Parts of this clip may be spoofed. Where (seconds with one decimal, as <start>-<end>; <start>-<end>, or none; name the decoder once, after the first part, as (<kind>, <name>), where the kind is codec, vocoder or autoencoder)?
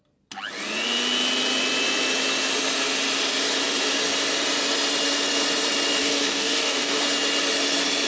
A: 6.0-7.0 (codec, DAC)